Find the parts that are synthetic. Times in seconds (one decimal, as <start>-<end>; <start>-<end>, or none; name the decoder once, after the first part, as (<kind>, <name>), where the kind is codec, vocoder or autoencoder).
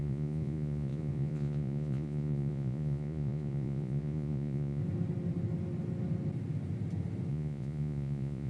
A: 0.0-4.8 (vocoder, Vocos); 7.3-8.5